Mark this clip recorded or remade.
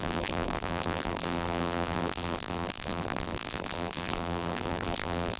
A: remade